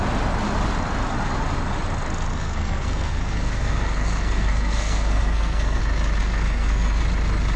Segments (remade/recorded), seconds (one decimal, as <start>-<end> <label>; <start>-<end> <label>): 0.0-2.3 recorded; 2.3-5.8 remade; 5.8-6.2 recorded; 6.2-7.0 remade; 7.0-7.6 recorded